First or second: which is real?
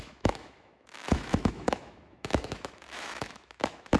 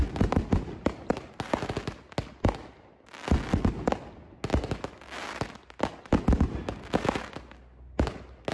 second